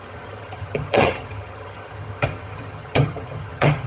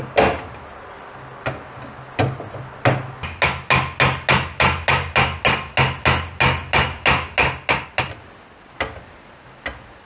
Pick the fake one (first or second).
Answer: first